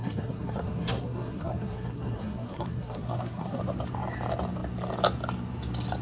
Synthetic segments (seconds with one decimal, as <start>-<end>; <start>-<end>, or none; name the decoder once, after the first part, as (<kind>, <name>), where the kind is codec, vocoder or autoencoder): 0.0-3.6 (codec, SNAC)

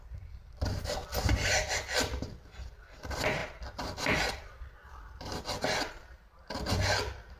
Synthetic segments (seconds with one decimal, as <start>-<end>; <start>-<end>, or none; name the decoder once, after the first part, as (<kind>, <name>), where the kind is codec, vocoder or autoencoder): 0.0-7.4 (vocoder, BigVGAN v2)